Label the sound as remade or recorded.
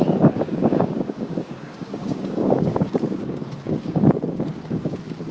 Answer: remade